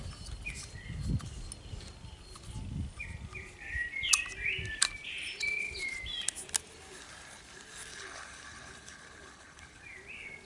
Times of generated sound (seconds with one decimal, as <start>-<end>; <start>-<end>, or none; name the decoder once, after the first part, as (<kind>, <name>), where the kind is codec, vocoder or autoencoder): 7.9-9.8 (codec, HILCodec)